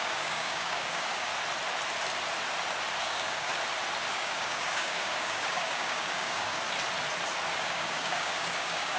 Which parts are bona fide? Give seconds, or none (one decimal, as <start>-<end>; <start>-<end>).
1.3-3.0; 3.5-4.1; 6.6-7.6